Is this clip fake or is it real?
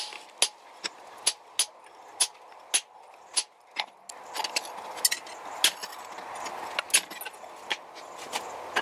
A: real